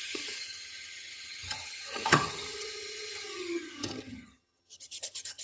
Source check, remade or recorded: remade